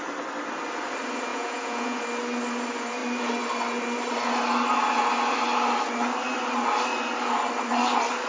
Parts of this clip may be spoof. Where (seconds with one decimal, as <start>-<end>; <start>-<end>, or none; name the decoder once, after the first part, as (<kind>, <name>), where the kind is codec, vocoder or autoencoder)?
1.3-2.0 (vocoder, Vocos)